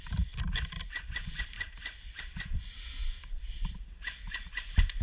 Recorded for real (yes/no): yes